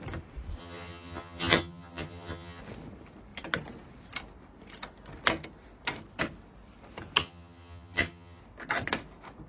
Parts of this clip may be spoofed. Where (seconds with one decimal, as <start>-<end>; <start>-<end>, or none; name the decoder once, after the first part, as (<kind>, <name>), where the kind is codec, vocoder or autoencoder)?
0.6-2.6 (vocoder, HiFi-GAN); 7.2-8.4